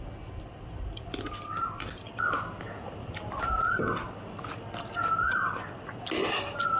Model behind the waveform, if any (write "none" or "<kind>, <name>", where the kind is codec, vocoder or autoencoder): none